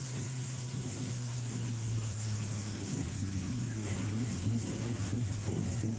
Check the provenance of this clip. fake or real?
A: fake